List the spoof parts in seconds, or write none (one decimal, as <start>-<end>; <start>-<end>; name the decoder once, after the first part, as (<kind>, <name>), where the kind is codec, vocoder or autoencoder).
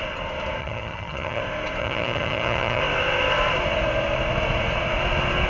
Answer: 0.6-1.4 (vocoder, HiFi-GAN); 1.8-2.8